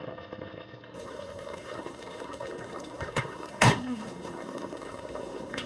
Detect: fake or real fake